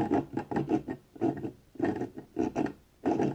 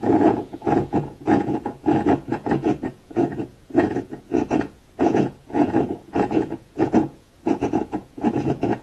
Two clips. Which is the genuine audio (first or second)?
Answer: first